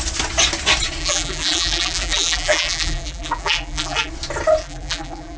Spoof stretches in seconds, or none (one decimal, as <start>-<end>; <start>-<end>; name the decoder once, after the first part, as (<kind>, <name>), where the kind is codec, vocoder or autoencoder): 1.0-4.1 (vocoder, BigVGAN v2); 4.6-5.4